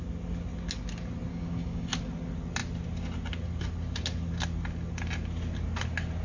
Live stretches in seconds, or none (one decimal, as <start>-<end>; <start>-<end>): 0.0-1.3; 1.9-6.2